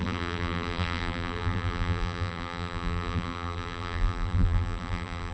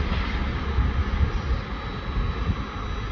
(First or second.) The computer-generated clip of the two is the first